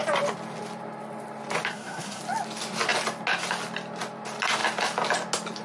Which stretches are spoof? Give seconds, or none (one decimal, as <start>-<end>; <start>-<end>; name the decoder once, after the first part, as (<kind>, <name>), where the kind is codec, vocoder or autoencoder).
1.7-2.2 (codec, SNAC)